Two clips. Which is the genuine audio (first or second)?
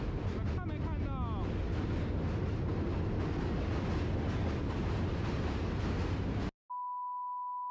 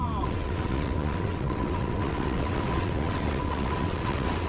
first